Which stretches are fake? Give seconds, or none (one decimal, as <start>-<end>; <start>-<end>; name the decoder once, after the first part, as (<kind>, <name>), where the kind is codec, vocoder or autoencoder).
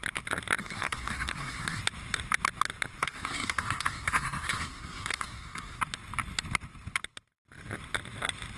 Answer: 0.6-1.8 (codec, SNAC); 3.0-5.8